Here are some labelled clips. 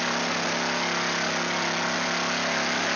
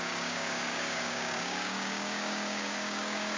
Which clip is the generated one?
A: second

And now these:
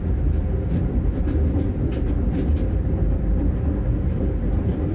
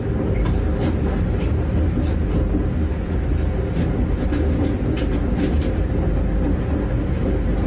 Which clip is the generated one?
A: first